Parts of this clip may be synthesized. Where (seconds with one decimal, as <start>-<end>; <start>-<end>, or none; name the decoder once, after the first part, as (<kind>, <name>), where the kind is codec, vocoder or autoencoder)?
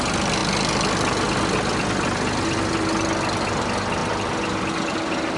none